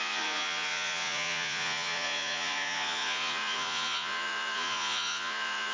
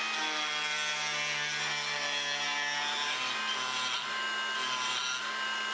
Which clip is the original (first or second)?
second